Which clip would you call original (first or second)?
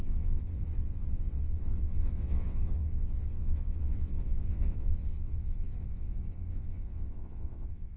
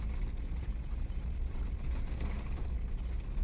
second